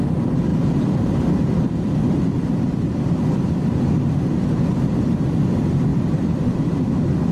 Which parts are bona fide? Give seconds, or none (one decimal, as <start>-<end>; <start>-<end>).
0.0-0.5; 4.9-5.9